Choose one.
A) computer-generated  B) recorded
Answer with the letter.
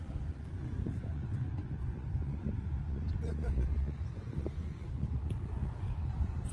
A